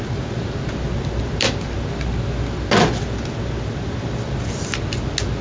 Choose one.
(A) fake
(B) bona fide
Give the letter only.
B